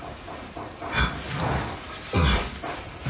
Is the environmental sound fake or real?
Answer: real